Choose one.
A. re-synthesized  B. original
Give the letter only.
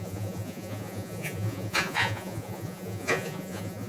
A